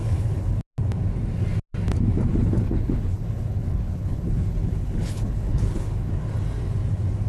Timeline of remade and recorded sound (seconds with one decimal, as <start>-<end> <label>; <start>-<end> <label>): 0.0-0.6 remade; 0.6-2.3 recorded; 2.3-6.1 remade; 6.1-7.3 recorded